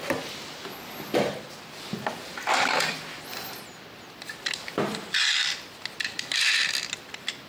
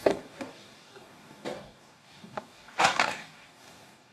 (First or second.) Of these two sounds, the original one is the first